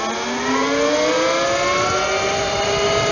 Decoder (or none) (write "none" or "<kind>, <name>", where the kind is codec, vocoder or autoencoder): none